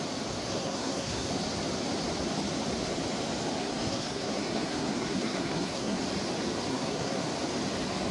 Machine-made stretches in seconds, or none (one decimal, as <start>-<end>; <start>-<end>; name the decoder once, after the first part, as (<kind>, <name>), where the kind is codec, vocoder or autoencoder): 0.5-1.3 (codec, SNAC); 3.6-6.0; 6.7-7.3